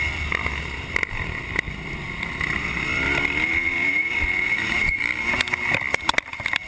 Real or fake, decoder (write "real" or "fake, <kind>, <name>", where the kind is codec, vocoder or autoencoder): real